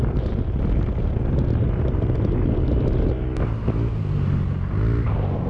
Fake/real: real